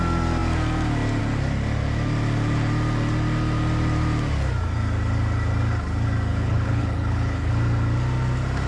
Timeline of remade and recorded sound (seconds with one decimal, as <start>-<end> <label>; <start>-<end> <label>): 0.0-6.3 recorded; 6.3-7.5 remade; 7.5-8.7 recorded